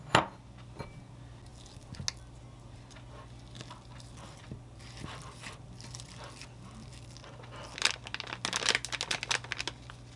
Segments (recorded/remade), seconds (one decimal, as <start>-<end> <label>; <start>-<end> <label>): 0.0-10.2 recorded